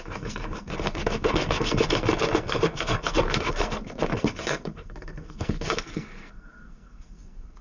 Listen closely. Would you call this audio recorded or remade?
remade